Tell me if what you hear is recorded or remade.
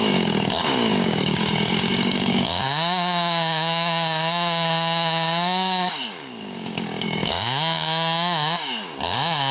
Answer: remade